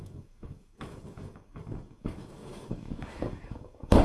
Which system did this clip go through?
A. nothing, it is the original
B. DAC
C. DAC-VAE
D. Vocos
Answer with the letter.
B